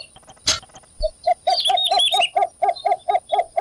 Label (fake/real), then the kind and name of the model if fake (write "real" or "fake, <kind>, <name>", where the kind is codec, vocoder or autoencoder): real